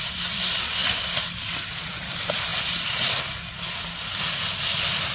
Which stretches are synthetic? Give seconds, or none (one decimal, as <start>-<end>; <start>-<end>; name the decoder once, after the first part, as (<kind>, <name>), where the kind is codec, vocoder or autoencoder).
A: 0.0-0.8 (vocoder, BigVGAN v2); 1.8-2.5; 4.2-5.1